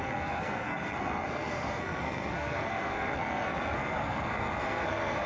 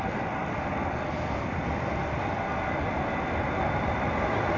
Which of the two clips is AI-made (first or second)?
first